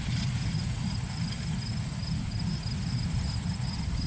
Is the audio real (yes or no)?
yes